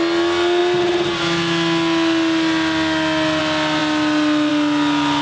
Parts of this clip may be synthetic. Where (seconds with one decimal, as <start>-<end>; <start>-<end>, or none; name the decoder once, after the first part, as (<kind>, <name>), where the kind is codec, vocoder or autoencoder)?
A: none